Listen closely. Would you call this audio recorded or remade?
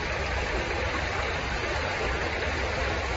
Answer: recorded